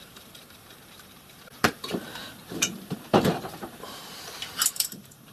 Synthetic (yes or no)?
yes